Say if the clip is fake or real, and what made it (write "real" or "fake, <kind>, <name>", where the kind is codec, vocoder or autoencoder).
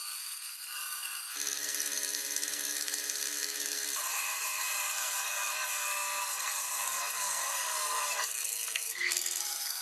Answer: fake, codec, SNAC